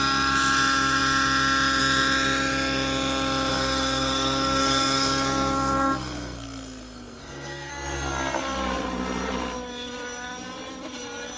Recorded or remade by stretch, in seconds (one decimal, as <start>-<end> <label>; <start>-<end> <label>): 0.0-3.5 recorded; 3.5-7.7 remade; 7.7-11.4 recorded